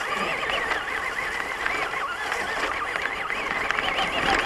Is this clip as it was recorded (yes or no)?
yes